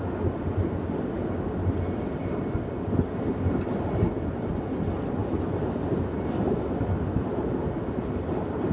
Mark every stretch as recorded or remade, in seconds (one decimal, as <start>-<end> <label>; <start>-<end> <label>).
0.0-8.7 recorded